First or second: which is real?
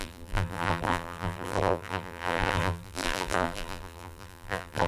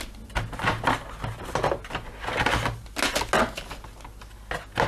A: second